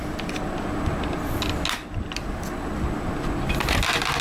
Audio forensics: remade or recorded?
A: recorded